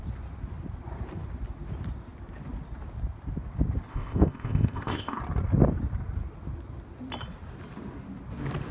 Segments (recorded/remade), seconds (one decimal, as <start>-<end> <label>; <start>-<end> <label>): 0.0-3.9 recorded; 3.9-5.2 remade; 5.2-8.7 recorded